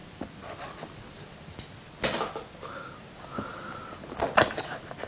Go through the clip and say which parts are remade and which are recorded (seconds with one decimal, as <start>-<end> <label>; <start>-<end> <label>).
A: 0.0-1.5 remade; 1.5-5.1 recorded